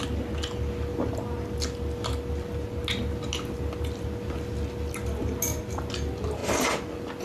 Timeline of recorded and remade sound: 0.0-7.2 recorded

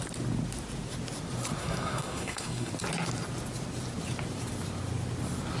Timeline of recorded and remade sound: 0.0-1.6 recorded; 1.6-2.7 remade; 2.7-5.6 recorded

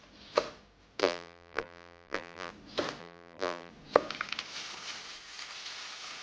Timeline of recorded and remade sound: 0.0-1.0 recorded; 1.0-2.5 remade; 2.5-3.0 recorded; 3.0-3.7 remade; 3.7-6.2 recorded